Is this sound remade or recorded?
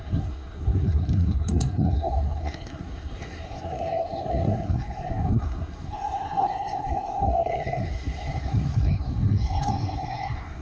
remade